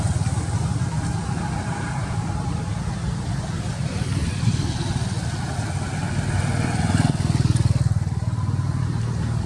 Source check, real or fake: real